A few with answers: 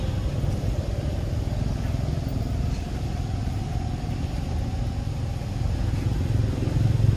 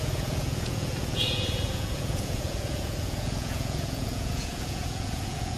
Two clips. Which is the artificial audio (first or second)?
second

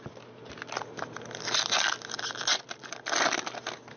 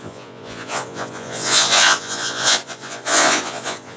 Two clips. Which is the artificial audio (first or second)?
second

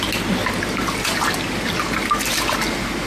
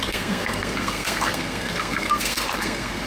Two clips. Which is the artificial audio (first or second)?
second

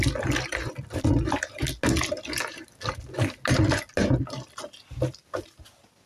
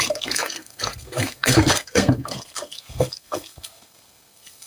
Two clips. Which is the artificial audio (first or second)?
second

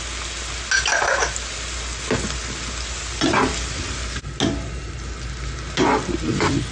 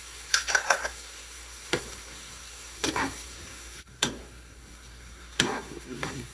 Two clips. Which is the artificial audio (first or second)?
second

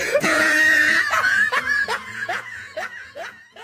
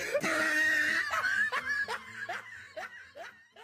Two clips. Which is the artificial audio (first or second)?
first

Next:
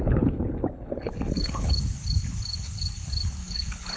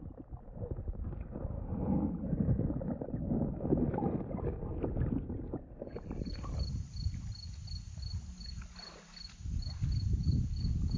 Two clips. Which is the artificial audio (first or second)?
first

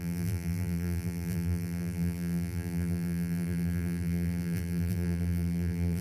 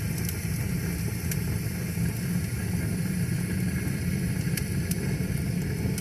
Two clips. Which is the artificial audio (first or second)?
first